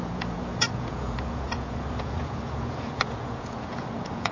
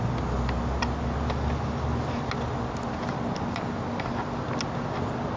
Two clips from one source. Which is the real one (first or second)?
second